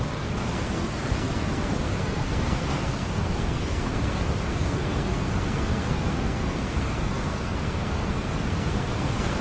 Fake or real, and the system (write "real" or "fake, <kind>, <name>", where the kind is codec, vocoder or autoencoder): fake, codec, SNAC